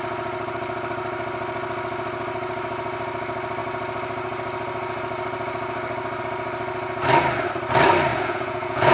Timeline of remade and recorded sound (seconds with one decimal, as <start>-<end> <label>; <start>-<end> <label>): 0.0-8.1 recorded; 8.1-8.9 remade